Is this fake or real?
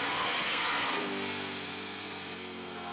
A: fake